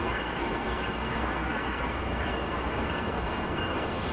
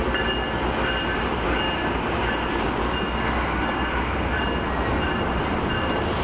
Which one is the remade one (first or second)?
first